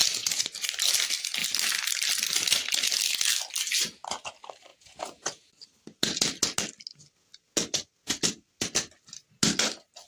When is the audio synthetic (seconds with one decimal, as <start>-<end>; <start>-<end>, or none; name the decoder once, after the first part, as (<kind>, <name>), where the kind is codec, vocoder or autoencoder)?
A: 4.7-5.5 (vocoder, Vocos)